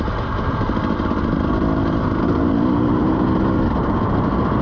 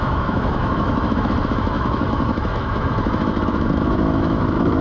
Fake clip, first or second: second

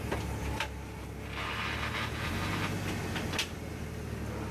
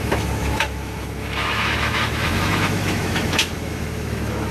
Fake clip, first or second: second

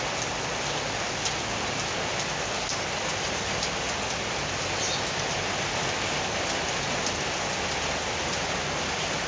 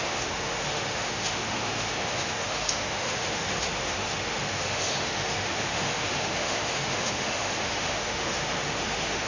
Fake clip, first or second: second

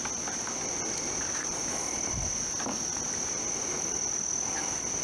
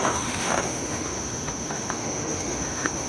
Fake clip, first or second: second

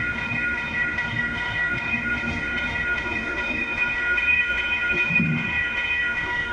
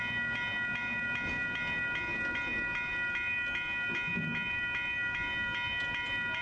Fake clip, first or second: first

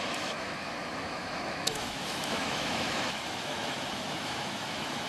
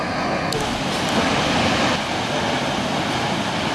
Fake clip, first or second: first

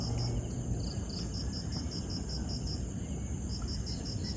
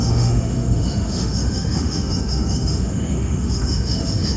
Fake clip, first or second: second